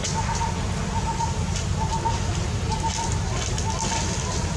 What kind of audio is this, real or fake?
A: real